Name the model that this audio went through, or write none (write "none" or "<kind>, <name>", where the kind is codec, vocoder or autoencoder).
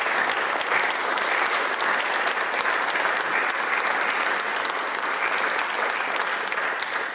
none